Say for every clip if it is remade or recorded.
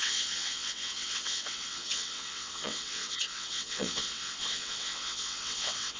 remade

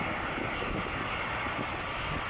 recorded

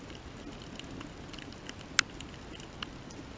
recorded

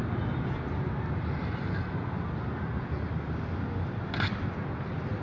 recorded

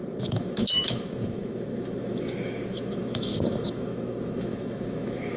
remade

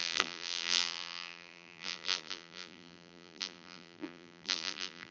remade